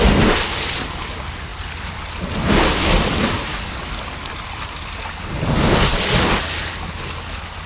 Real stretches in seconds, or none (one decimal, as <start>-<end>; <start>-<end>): 0.0-7.7